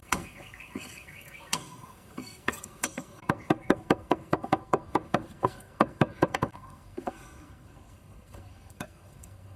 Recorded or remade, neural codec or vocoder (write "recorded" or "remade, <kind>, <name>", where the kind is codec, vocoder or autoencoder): remade, codec, SNAC